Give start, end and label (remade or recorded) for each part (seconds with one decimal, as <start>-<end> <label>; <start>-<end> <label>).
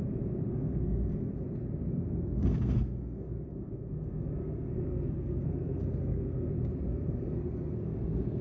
0.0-0.5 recorded; 0.5-1.3 remade; 1.3-1.9 recorded; 1.9-6.5 remade; 6.5-6.9 recorded; 6.9-8.4 remade